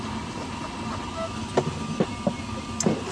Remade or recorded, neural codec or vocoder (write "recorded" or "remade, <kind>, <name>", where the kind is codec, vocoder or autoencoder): recorded